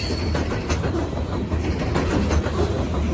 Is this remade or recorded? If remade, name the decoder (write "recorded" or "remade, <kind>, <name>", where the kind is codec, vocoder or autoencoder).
recorded